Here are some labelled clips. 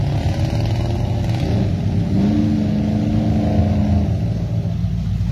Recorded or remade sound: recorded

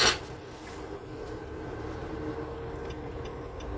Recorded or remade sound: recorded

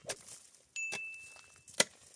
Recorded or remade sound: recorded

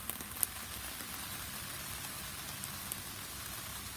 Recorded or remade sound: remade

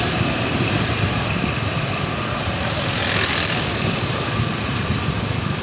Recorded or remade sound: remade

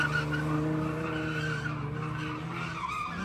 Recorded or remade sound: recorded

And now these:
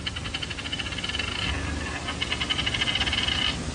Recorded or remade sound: recorded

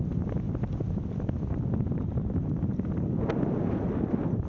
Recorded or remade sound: recorded